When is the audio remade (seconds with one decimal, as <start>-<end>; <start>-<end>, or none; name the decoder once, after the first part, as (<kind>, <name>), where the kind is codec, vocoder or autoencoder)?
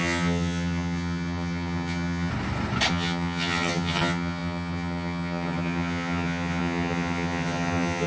0.0-2.3 (vocoder, HiFi-GAN); 2.9-8.1